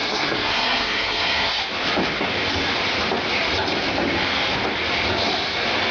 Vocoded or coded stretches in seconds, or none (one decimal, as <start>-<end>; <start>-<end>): 0.0-1.6